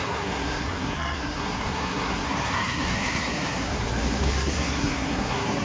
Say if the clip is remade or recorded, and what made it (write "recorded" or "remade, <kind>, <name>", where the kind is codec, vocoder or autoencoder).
remade, codec, SNAC